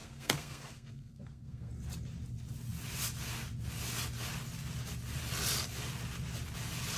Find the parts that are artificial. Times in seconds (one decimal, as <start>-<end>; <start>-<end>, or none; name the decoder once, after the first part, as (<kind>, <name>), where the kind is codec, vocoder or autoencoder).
0.0-1.7 (codec, SNAC)